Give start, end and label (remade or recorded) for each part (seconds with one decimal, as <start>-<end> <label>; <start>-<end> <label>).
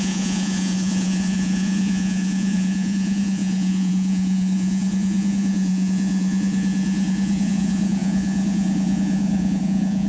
0.0-10.1 remade